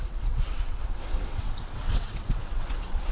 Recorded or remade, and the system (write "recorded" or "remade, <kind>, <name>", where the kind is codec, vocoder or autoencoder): remade, vocoder, WaveNeXt